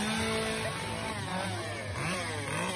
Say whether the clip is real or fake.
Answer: real